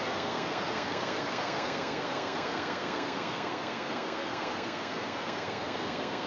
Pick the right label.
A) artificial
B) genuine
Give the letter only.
A